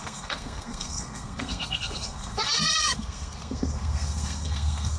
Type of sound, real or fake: fake